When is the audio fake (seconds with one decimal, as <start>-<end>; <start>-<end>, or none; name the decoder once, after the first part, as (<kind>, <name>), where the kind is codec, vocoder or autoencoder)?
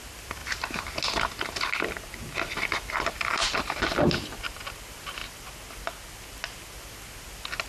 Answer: none